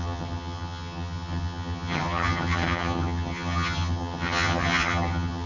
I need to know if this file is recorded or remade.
remade